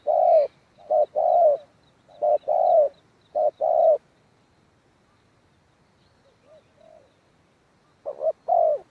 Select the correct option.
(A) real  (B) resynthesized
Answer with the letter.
A